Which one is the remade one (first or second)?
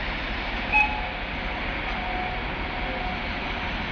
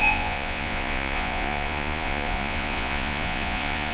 second